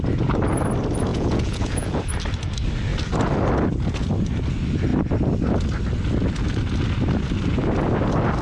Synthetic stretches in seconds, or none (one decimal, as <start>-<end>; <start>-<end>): 1.1-2.0